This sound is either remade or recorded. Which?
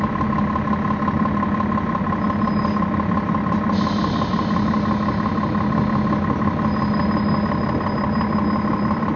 recorded